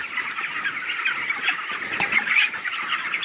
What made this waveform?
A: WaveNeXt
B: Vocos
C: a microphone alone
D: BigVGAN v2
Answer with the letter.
C